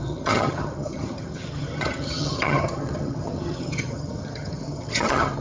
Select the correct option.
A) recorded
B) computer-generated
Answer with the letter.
B